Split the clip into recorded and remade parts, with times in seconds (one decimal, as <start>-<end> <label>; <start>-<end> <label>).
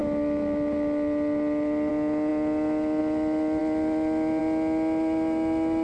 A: 0.0-5.8 recorded